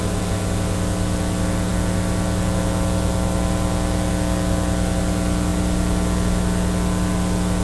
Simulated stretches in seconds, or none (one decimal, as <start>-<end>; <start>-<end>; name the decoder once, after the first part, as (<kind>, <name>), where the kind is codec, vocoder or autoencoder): none